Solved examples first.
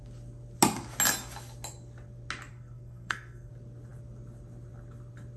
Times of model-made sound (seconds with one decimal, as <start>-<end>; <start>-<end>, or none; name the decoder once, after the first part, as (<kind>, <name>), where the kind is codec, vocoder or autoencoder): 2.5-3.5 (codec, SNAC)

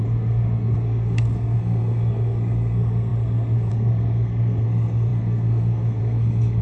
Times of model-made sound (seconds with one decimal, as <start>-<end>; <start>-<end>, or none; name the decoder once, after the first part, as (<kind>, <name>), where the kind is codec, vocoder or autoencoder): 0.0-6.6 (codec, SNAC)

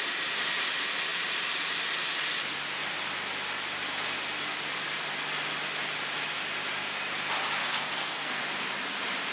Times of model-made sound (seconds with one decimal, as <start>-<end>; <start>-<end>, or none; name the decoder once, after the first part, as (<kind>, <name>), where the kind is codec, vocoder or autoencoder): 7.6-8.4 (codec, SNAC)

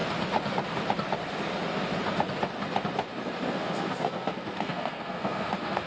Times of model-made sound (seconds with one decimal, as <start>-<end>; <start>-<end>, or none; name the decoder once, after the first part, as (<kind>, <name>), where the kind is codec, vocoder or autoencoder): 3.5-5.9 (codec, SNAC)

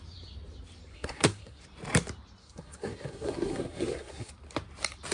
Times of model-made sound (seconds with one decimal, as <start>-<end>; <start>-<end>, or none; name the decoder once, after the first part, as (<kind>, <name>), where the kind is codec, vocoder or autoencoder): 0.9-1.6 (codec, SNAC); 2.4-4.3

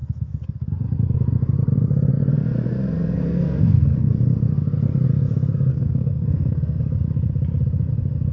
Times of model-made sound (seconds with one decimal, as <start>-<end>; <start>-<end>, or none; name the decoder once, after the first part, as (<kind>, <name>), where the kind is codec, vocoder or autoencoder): 3.2-4.1 (codec, SNAC); 5.7-6.8

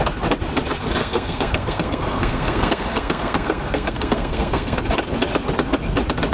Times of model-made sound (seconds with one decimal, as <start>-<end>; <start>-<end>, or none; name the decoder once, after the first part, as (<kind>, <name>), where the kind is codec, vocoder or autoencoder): 1.0-4.8 (codec, SNAC)